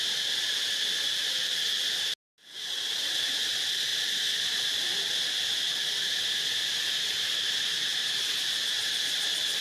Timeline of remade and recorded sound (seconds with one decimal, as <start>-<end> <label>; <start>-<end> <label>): 0.0-9.6 recorded